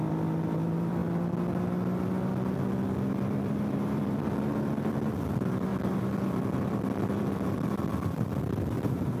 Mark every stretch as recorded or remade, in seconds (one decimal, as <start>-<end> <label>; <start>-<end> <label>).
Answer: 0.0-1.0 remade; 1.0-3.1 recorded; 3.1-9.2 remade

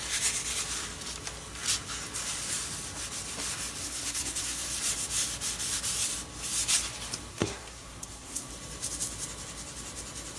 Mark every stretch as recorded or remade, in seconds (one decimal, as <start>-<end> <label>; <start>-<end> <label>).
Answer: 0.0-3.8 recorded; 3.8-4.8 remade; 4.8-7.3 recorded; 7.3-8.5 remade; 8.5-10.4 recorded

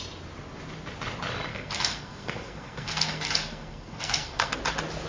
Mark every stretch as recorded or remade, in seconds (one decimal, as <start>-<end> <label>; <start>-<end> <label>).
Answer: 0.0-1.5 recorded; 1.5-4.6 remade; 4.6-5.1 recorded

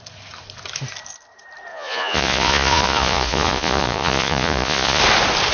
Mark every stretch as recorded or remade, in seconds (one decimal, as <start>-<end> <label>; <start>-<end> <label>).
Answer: 0.0-1.7 recorded; 1.7-5.0 remade; 5.0-5.5 recorded

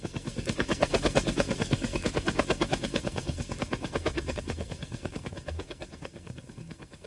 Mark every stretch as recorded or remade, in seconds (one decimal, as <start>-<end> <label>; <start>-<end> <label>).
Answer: 0.0-7.1 remade